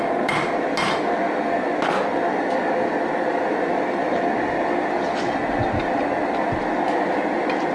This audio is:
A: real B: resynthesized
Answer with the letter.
A